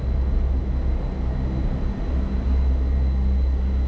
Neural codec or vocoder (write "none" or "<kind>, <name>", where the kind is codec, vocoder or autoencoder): none